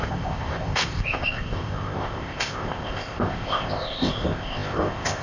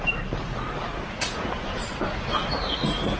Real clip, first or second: second